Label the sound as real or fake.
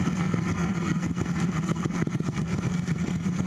fake